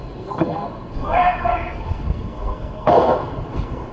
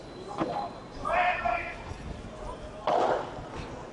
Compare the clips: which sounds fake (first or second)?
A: first